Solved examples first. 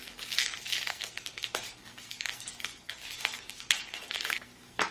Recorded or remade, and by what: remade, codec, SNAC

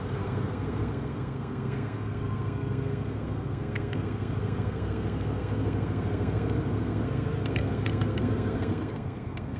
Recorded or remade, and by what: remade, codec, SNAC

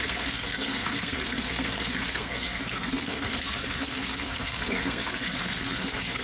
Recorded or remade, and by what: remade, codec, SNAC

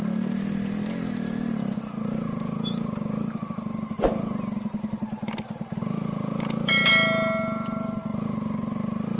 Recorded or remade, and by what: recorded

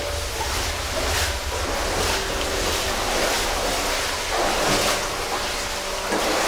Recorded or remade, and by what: recorded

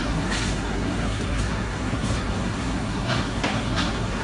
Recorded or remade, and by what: remade, codec, SNAC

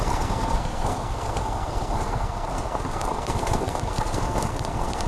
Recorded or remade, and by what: remade, codec, SNAC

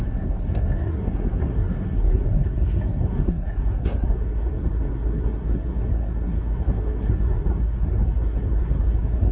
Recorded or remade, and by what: remade, codec, SNAC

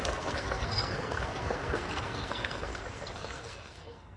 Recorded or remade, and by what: remade, codec, SNAC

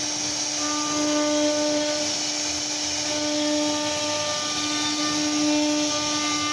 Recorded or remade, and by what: recorded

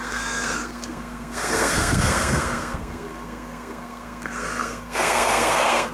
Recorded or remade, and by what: remade, codec, SNAC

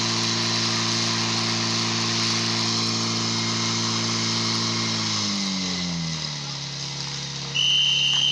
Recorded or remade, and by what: recorded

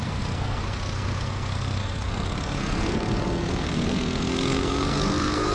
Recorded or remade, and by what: remade, codec, SNAC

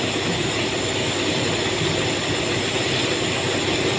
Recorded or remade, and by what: recorded